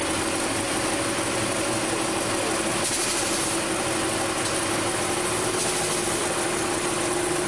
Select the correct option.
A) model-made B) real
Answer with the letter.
B